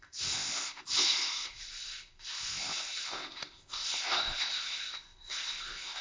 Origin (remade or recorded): remade